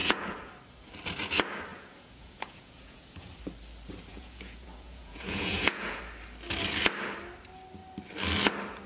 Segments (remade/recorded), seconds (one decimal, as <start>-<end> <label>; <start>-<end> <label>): 0.0-0.5 remade; 0.5-1.7 recorded; 1.7-3.3 remade; 3.3-4.1 recorded; 4.1-6.0 remade; 6.0-8.9 recorded